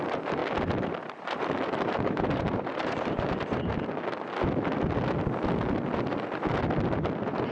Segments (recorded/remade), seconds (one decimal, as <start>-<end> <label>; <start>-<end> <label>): 0.0-0.4 remade; 0.4-1.1 recorded; 1.1-3.7 remade; 3.7-6.9 recorded; 6.9-7.5 remade